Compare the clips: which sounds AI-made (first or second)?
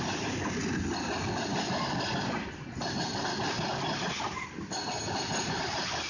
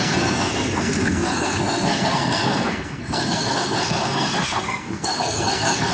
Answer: second